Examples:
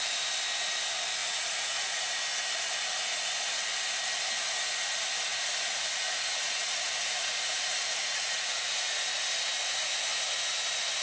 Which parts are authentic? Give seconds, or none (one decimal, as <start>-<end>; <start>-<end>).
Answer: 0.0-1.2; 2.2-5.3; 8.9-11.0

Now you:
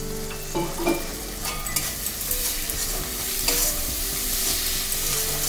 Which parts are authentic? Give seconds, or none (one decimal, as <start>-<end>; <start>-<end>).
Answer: 0.0-1.1; 4.4-5.5

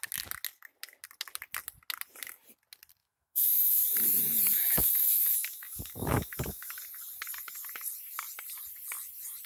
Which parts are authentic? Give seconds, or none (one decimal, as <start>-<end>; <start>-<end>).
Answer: 0.0-3.0; 3.8-4.5; 6.7-9.5